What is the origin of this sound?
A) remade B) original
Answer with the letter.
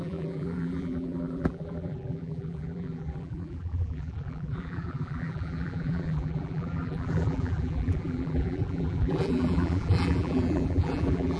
A